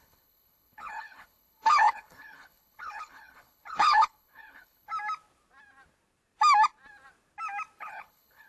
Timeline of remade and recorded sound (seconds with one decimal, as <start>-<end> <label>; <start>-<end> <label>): 0.0-4.9 remade; 4.9-7.8 recorded; 7.8-8.5 remade